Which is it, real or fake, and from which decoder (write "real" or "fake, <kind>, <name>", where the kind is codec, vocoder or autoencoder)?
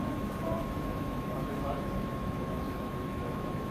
fake, autoencoder, DAC-VAE